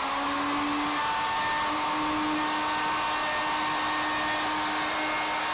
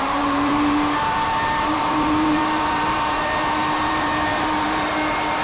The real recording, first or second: first